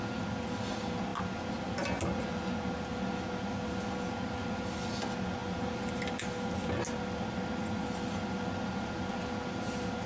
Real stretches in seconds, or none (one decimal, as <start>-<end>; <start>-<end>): 0.0-10.1